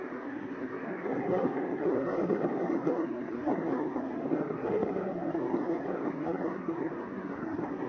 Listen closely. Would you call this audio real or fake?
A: fake